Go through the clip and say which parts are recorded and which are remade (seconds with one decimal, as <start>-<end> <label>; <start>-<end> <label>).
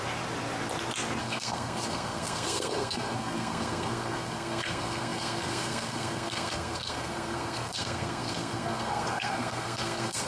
0.0-1.2 recorded; 1.2-10.3 remade